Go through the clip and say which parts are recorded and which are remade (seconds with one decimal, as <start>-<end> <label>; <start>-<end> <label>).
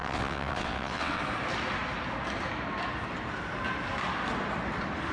0.0-1.2 remade; 1.2-5.1 recorded